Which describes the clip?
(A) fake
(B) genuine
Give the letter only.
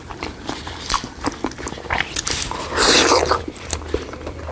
A